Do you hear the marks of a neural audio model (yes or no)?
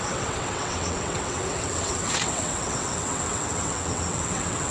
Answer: yes